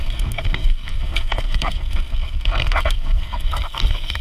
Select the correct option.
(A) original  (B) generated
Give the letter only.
B